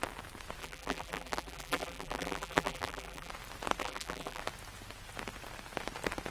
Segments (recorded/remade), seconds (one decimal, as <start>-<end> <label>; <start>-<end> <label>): 0.0-0.6 recorded; 0.6-3.3 remade; 3.3-3.8 recorded; 3.8-4.4 remade; 4.4-6.3 recorded